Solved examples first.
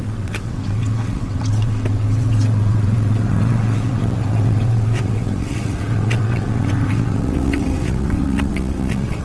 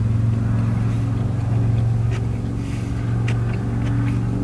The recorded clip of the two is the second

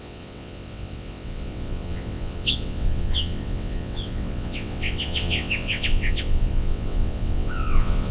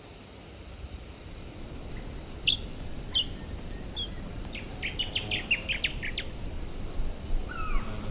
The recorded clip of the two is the second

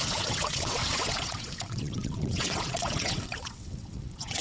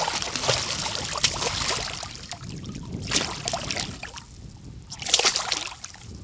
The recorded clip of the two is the second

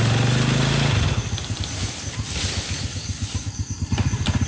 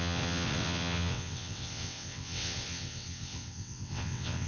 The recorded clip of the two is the first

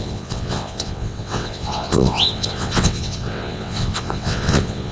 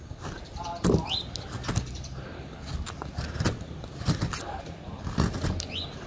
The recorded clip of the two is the second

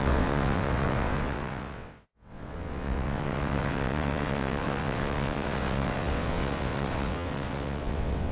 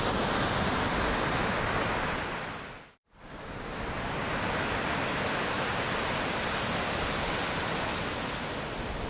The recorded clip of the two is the second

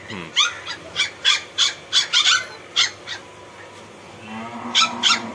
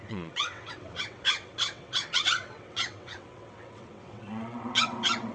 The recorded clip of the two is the first